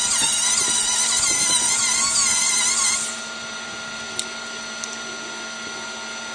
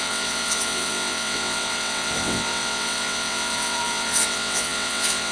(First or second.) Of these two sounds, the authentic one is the first